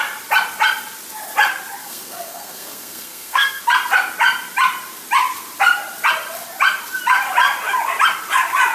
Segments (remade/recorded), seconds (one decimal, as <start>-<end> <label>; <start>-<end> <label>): 0.0-1.8 recorded; 1.8-3.6 remade; 3.6-8.7 recorded

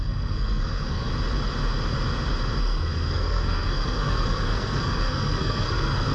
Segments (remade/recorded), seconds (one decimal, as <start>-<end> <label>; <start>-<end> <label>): 0.0-1.1 remade; 1.1-2.6 recorded; 2.6-6.1 remade

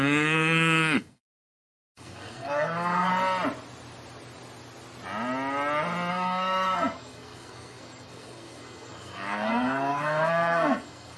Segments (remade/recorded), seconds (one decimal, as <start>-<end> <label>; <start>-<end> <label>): 0.0-3.1 remade; 3.1-6.1 recorded; 6.1-11.2 remade

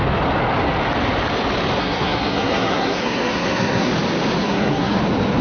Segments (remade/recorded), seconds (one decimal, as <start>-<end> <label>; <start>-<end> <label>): 0.0-1.8 recorded; 1.8-3.9 remade; 3.9-4.4 recorded; 4.4-5.0 remade; 5.0-5.4 recorded

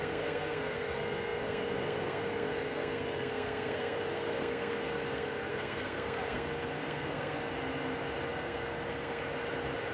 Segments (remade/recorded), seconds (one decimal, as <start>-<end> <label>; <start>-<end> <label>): 0.0-7.5 remade; 7.5-8.3 recorded; 8.3-9.2 remade; 9.2-9.9 recorded

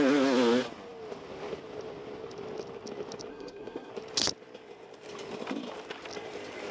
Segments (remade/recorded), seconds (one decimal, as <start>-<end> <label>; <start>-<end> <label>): 0.0-3.3 recorded; 3.3-3.9 remade; 3.9-6.7 recorded